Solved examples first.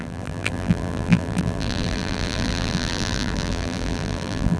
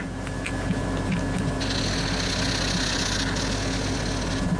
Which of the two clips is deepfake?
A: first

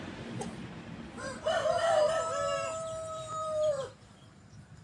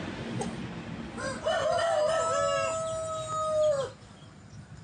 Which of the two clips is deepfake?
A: first